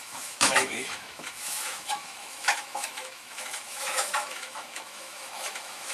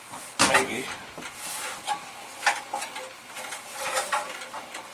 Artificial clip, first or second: first